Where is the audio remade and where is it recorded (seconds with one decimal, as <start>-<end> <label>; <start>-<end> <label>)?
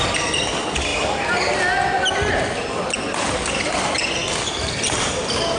0.0-5.6 recorded